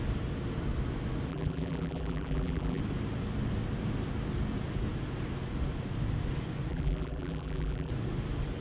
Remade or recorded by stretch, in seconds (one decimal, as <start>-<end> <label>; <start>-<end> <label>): 0.0-1.3 recorded; 1.3-2.8 remade; 2.8-6.7 recorded; 6.7-7.9 remade; 7.9-8.6 recorded